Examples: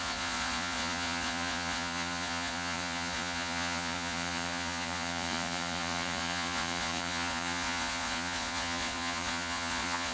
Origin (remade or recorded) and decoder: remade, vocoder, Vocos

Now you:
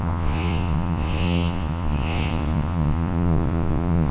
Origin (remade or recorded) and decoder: remade, vocoder, Vocos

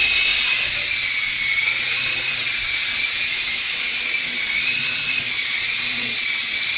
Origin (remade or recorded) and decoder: remade, vocoder, Vocos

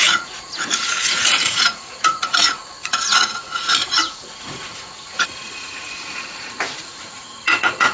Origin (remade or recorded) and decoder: remade, vocoder, Vocos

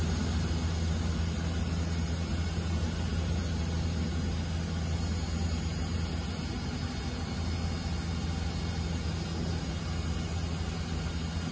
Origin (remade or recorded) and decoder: recorded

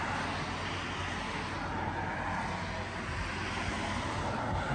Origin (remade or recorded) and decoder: recorded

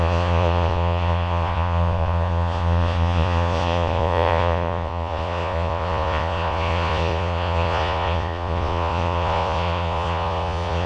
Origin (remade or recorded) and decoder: remade, vocoder, Vocos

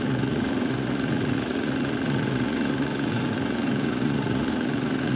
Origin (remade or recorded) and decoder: remade, vocoder, Vocos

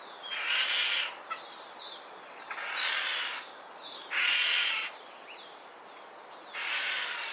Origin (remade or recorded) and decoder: recorded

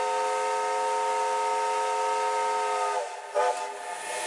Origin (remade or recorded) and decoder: recorded